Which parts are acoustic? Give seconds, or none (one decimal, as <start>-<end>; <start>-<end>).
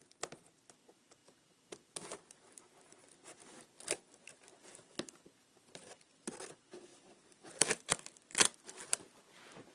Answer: 0.0-6.9; 8.0-9.7